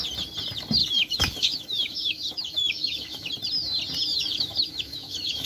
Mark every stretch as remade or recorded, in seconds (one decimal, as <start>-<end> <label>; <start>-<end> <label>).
0.0-0.8 recorded; 0.8-3.3 remade; 3.3-4.1 recorded; 4.1-5.5 remade